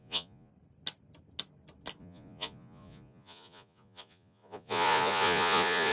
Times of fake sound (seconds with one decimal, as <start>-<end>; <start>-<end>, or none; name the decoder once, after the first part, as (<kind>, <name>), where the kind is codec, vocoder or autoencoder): 0.0-0.5 (vocoder, Vocos); 2.0-5.9